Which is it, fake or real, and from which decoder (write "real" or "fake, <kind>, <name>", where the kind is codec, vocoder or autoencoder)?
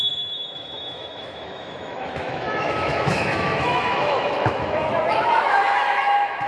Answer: fake, autoencoder, DAC-VAE